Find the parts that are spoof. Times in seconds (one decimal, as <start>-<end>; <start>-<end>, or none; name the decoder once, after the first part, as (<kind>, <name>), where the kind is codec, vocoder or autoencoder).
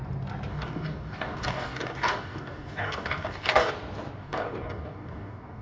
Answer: 0.5-3.7 (codec, DAC); 4.2-5.6